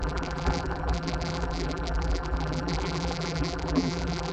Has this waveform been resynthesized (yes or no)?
yes